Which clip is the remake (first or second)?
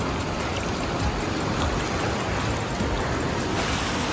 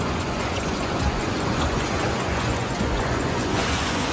second